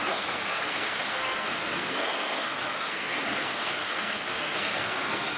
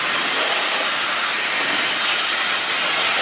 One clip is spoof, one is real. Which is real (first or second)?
second